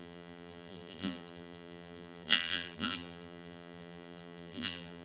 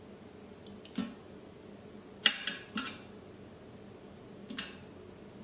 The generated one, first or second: first